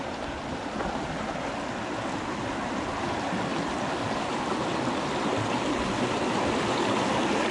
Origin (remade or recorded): recorded